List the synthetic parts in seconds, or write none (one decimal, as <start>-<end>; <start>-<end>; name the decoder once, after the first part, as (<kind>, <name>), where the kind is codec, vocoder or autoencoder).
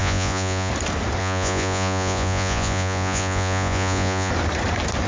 0.0-0.7 (vocoder, Vocos); 1.2-4.3